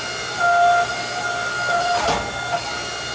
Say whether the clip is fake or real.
real